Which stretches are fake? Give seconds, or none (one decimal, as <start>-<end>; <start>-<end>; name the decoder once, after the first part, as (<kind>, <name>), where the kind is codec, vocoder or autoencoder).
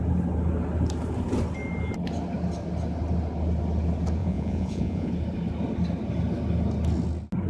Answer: 4.2-5.1 (vocoder, Vocos)